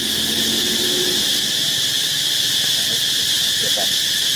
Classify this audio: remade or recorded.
recorded